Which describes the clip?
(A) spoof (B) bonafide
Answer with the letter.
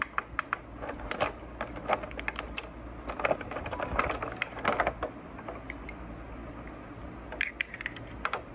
B